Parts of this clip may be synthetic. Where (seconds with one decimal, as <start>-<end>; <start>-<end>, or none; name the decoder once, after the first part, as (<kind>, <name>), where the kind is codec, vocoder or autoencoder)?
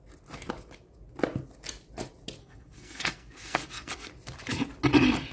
2.4-4.1 (codec, SNAC)